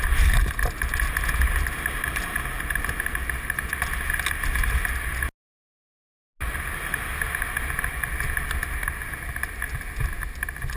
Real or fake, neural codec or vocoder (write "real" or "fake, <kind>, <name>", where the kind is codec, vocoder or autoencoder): real